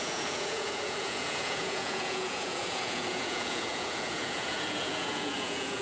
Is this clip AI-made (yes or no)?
yes